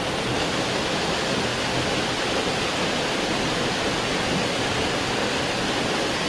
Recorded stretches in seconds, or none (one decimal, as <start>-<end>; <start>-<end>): 0.0-6.3